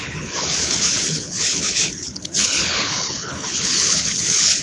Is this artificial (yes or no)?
yes